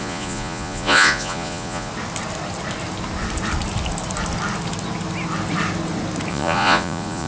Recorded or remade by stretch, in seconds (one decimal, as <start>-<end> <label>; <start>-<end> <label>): 0.0-1.9 remade; 1.9-6.3 recorded; 6.3-7.3 remade